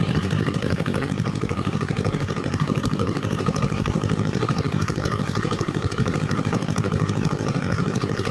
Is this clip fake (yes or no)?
yes